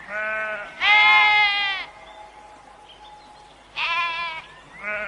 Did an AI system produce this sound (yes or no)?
no